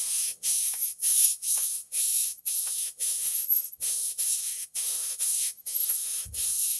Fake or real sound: fake